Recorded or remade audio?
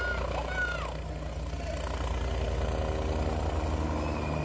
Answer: recorded